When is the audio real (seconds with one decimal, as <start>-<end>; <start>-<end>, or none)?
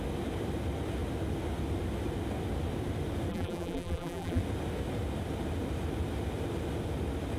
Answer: 0.0-3.3; 4.4-7.4